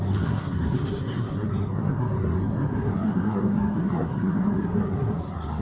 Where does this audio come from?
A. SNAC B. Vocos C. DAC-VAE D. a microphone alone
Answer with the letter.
A